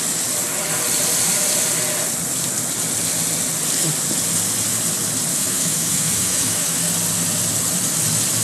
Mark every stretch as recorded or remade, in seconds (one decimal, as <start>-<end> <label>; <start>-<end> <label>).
0.0-5.3 recorded; 5.3-6.9 remade; 6.9-8.4 recorded